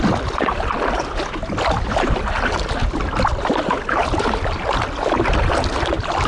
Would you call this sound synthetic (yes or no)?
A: no